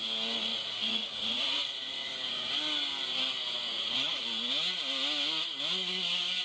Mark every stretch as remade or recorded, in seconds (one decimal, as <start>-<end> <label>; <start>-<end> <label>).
0.0-0.5 recorded; 0.5-2.5 remade; 2.5-3.6 recorded; 3.6-4.2 remade; 4.2-6.4 recorded